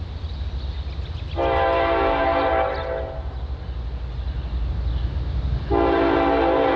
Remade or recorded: recorded